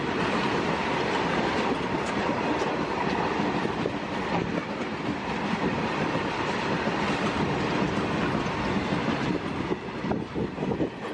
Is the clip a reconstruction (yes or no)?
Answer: no